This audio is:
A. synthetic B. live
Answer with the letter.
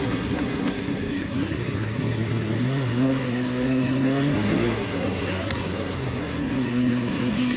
A